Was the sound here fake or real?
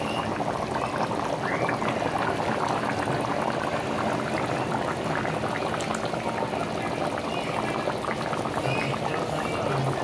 real